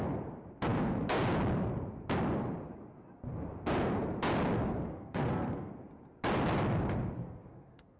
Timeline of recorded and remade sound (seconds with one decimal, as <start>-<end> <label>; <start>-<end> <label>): 0.0-4.9 recorded; 4.9-5.7 remade; 5.7-7.2 recorded; 7.2-8.0 remade